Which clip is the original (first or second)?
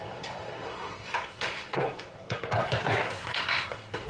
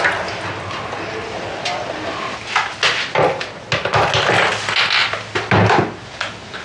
second